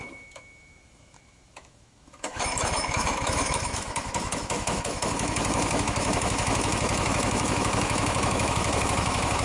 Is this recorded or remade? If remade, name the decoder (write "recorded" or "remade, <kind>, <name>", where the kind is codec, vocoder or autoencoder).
remade, autoencoder, DAC-VAE